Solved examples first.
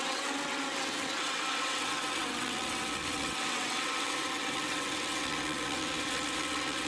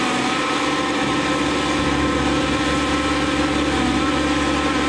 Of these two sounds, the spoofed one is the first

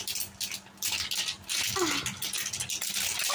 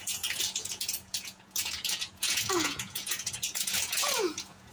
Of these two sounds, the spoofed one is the second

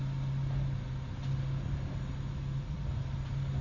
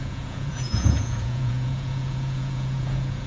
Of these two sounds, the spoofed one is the second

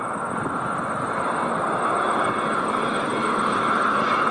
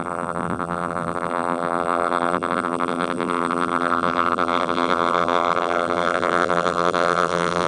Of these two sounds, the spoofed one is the second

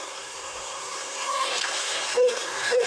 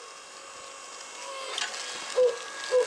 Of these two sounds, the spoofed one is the first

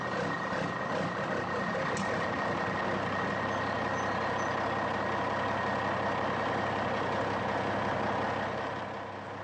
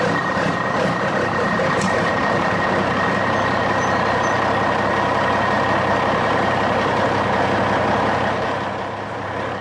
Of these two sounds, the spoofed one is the second